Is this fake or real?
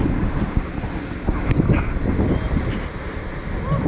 real